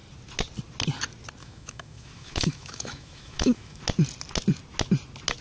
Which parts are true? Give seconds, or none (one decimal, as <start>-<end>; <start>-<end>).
0.0-1.4; 3.8-5.4